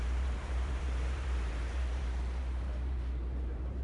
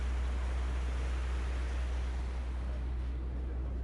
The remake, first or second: first